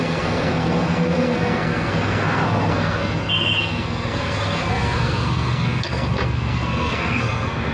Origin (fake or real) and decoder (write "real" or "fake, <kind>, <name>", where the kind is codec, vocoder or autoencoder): fake, codec, SNAC